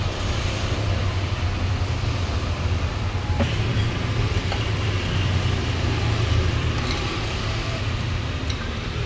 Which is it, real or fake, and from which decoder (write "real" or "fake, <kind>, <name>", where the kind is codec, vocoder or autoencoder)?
fake, vocoder, BigVGAN v2